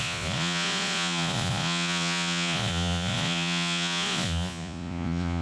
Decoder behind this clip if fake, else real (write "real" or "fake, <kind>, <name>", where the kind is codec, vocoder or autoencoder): fake, vocoder, Vocos